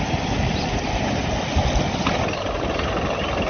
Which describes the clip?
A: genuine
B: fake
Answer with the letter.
A